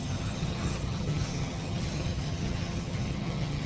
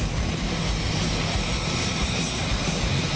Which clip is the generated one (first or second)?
first